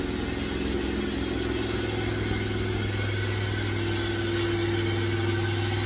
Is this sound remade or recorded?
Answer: recorded